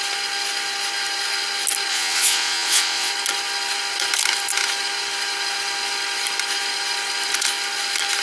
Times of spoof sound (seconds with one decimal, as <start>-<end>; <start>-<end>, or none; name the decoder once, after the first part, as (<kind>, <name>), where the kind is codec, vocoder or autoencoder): 1.9-3.1 (vocoder, WaveNeXt)